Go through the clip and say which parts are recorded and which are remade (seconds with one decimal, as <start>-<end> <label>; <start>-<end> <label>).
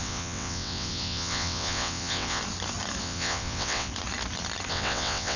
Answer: 0.0-2.4 remade; 2.4-3.0 recorded; 3.0-3.9 remade; 3.9-4.7 recorded; 4.7-5.4 remade